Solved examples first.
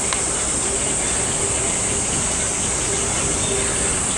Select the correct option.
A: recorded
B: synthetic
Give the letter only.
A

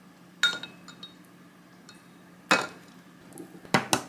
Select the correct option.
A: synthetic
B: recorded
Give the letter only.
B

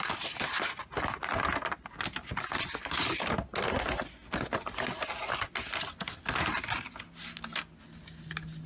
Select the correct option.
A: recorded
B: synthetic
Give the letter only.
A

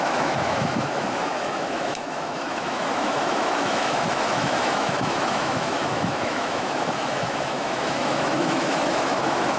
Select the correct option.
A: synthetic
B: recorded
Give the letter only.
A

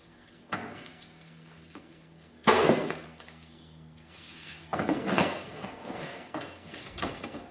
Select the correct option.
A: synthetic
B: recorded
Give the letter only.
A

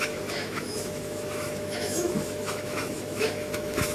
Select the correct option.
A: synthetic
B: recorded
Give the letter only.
A